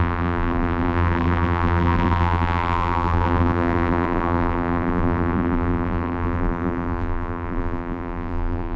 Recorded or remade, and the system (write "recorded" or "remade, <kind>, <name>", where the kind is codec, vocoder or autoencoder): remade, vocoder, BigVGAN v2